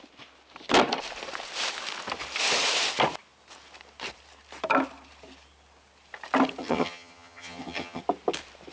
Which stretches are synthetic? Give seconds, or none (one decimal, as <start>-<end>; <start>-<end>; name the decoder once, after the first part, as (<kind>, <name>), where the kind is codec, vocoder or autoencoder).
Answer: 6.6-8.0 (vocoder, HiFi-GAN)